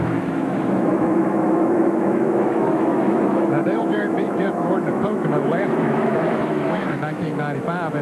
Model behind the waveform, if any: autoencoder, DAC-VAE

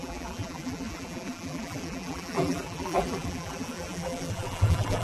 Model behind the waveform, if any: vocoder, BigVGAN v2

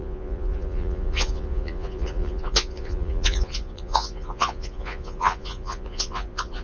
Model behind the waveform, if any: vocoder, Vocos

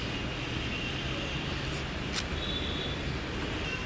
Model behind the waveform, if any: none